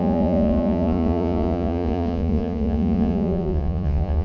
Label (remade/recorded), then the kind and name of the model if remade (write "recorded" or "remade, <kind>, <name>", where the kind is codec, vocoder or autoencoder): remade, vocoder, Vocos